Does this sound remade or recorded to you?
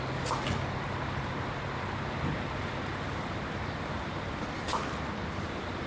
recorded